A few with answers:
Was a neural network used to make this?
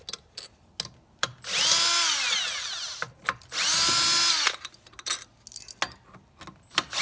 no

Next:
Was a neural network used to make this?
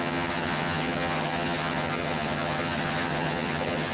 yes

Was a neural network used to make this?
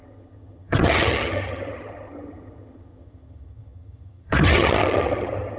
yes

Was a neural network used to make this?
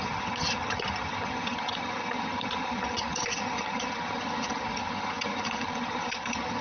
yes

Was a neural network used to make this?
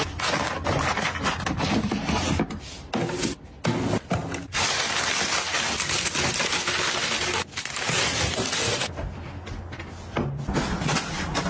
no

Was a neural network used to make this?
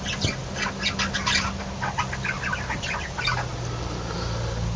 no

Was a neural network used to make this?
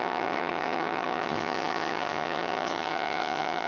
yes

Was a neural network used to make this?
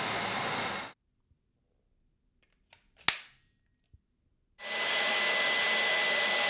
no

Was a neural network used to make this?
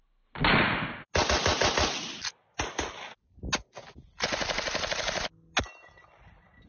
no